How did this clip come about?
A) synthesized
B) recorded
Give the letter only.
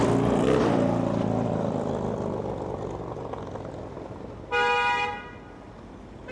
B